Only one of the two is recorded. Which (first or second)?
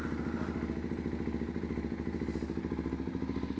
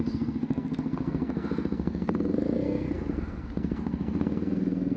first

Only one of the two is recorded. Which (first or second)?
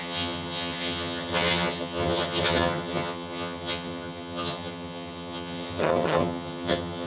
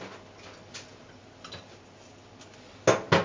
second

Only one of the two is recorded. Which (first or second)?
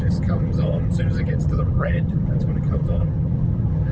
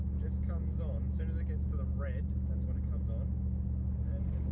second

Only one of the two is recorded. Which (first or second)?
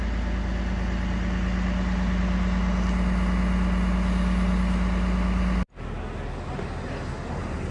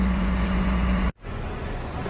first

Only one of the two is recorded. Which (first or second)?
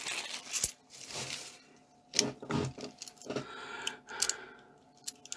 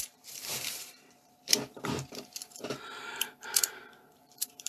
first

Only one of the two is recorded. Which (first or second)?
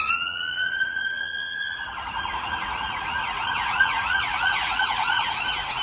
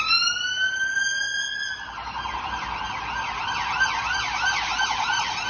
second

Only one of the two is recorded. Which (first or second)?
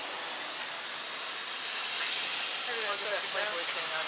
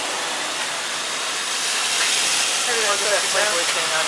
first